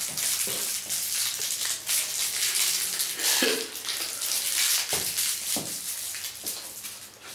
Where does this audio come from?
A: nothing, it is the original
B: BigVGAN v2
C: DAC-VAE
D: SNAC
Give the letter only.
A